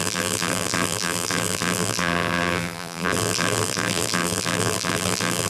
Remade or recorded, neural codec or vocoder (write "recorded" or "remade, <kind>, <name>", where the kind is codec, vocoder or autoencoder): remade, vocoder, BigVGAN v2